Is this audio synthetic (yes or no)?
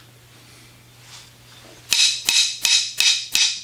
no